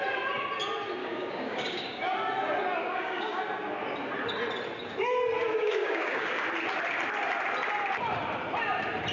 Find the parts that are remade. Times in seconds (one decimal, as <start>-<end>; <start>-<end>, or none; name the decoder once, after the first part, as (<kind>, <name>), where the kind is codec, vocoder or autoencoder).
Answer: 1.0-2.0 (codec, DAC); 2.8-3.4; 5.5-6.4